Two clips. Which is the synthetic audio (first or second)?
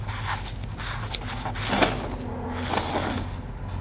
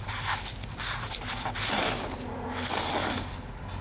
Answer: second